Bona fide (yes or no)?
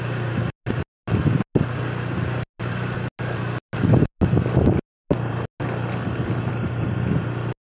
yes